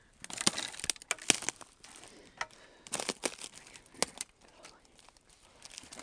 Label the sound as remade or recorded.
recorded